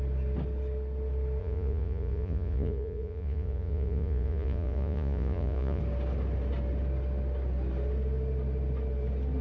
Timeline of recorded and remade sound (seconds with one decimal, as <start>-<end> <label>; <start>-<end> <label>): 0.0-1.4 recorded; 1.4-5.8 remade; 5.8-9.4 recorded